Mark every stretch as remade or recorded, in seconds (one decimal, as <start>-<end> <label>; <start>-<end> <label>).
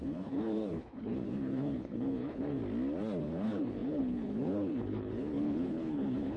0.0-2.6 remade; 2.6-3.2 recorded; 3.2-6.4 remade